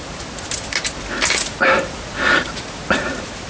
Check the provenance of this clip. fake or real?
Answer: real